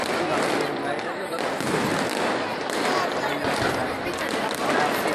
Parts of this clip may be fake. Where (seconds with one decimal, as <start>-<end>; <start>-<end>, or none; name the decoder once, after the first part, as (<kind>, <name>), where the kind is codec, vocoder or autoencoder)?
none